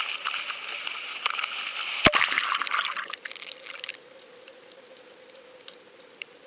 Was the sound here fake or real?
real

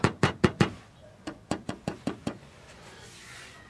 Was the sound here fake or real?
fake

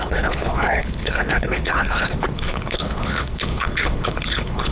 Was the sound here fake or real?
fake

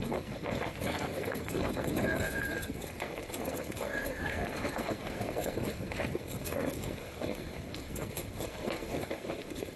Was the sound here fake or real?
fake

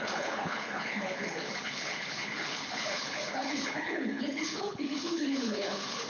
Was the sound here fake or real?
fake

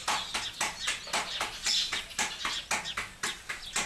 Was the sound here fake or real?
real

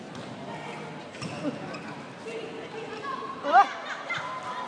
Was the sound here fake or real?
real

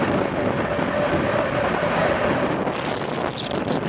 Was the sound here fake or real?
real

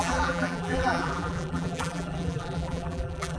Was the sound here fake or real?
fake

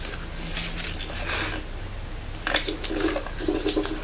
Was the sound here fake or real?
real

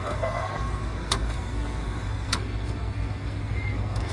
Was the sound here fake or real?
fake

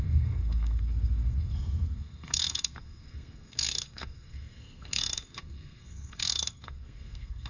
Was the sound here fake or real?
fake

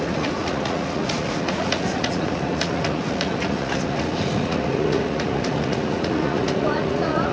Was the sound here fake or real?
fake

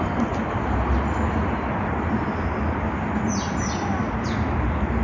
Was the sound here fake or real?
real